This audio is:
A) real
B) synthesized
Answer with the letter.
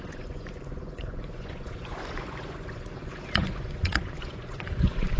B